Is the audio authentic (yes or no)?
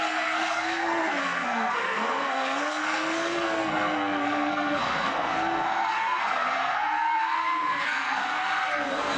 no